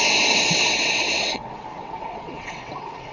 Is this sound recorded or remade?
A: remade